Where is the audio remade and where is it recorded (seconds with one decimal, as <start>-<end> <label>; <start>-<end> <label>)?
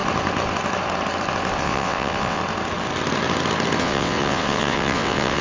0.0-1.6 recorded; 1.6-2.4 remade; 2.4-3.8 recorded; 3.8-5.4 remade